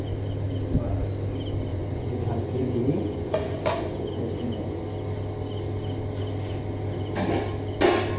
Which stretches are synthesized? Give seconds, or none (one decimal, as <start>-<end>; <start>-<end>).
1.7-4.8